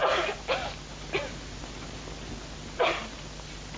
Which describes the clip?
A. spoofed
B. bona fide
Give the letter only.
B